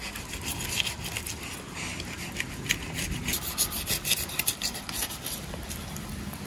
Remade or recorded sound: recorded